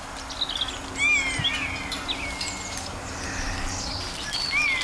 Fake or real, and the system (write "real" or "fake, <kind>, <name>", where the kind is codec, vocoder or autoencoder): real